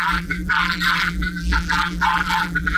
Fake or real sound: fake